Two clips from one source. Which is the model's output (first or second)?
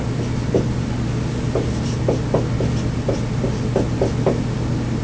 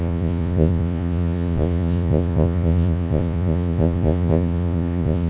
second